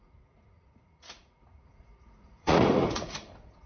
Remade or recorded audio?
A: remade